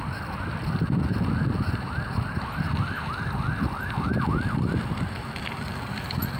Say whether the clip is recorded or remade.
recorded